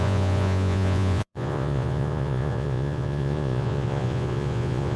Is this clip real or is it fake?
fake